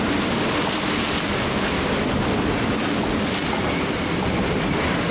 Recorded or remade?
recorded